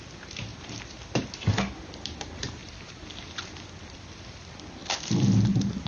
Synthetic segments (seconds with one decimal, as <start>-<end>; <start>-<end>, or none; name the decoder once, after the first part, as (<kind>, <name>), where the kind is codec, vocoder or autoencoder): none